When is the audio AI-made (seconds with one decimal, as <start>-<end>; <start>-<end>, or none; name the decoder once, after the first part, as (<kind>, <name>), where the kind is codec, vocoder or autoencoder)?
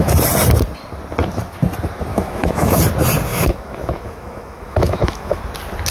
2.1-2.8 (autoencoder, DAC-VAE); 3.3-5.4